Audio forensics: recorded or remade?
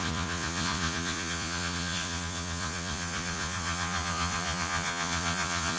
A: remade